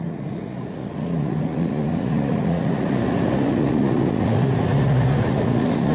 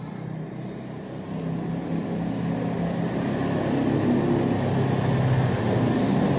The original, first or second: second